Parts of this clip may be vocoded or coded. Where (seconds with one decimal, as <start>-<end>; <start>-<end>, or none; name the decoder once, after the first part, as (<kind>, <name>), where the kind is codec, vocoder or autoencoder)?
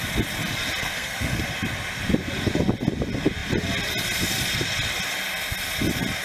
0.8-1.4 (codec, SNAC)